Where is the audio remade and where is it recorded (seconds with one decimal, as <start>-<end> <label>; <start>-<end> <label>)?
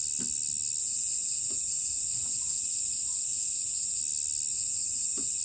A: 0.0-0.8 recorded; 0.8-4.0 remade; 4.0-4.5 recorded; 4.5-5.4 remade